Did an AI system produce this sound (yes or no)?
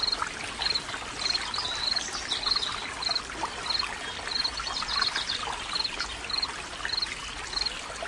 no